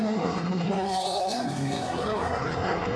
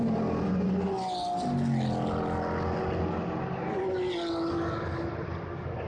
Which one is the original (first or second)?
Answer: second